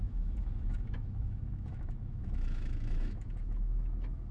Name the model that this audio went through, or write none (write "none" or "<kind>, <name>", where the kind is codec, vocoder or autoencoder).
autoencoder, DAC-VAE